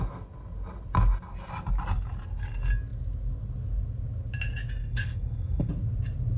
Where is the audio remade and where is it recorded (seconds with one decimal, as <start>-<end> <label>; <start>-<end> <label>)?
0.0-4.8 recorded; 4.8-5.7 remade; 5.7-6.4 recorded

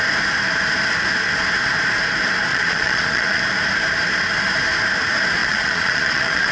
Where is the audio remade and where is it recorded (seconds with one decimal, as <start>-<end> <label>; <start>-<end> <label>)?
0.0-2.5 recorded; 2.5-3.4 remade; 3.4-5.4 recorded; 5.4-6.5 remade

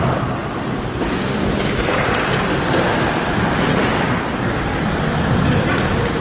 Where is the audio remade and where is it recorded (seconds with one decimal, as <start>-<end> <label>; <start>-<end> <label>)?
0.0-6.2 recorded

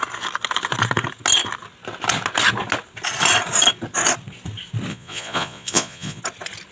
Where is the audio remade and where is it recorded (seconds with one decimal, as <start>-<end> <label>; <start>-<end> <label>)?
0.0-4.9 recorded; 4.9-6.2 remade; 6.2-6.7 recorded